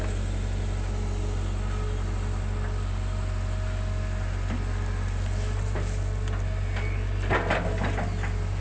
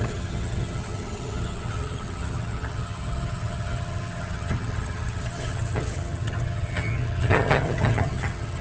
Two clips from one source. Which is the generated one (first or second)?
second